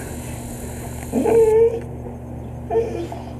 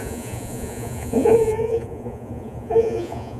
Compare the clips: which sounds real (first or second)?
first